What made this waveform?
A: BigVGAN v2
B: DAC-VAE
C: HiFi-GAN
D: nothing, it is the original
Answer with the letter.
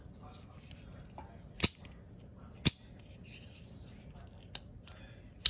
D